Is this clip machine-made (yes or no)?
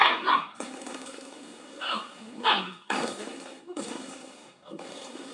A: yes